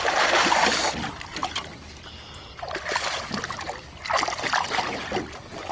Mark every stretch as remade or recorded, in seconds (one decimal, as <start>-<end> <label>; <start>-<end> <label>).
0.0-5.7 recorded